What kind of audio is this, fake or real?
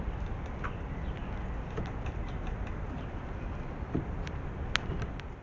real